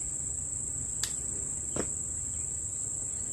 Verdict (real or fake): real